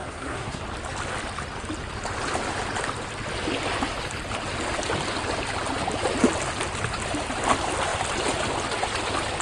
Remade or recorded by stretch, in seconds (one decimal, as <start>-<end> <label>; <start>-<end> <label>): 0.0-0.6 remade; 0.6-9.4 recorded